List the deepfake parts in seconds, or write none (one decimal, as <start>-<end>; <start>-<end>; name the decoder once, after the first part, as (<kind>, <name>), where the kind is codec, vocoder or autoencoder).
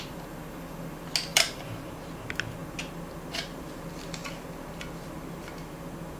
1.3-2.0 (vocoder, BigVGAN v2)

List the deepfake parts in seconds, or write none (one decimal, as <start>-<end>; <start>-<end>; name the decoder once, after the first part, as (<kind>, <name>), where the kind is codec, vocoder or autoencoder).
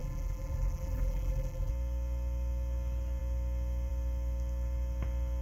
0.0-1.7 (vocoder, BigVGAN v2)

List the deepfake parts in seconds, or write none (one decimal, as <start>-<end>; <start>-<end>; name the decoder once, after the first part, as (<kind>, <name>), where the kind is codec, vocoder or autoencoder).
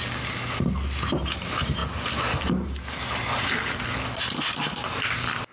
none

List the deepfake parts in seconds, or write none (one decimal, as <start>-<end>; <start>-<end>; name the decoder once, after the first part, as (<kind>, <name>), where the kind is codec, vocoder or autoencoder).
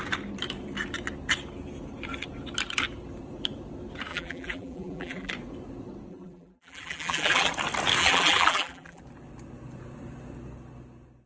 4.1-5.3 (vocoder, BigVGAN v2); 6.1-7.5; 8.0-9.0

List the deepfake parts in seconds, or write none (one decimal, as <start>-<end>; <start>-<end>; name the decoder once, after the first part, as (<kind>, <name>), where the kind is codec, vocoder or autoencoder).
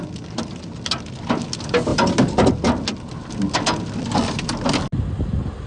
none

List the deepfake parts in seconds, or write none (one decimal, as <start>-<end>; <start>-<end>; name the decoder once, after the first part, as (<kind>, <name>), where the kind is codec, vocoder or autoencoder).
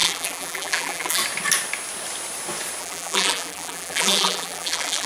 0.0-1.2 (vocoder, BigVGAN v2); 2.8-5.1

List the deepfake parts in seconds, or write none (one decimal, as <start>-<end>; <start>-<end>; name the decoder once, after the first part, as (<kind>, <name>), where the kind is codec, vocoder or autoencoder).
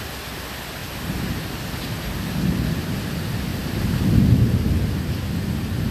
3.5-4.1 (vocoder, BigVGAN v2)